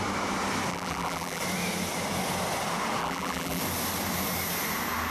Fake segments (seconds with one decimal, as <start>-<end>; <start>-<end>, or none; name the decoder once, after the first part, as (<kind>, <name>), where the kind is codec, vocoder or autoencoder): 0.7-1.4 (vocoder, BigVGAN v2); 3.0-3.6

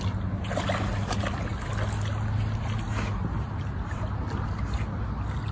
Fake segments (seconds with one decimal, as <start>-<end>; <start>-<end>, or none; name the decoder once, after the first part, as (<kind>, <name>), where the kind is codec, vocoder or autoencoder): none

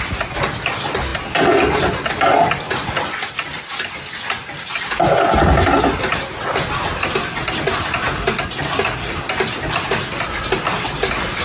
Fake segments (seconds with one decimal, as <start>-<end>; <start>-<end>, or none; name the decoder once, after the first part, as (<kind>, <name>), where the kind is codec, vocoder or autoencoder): none